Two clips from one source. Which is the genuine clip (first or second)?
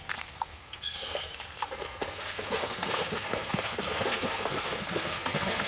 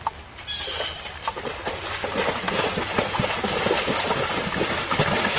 second